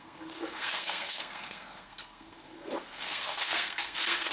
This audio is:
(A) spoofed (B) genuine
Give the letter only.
A